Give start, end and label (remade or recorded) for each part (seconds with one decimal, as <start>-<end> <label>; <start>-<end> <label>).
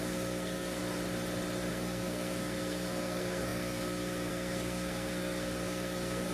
0.0-0.8 remade; 0.8-1.7 recorded; 1.7-6.3 remade